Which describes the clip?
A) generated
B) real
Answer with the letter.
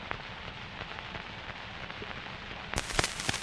B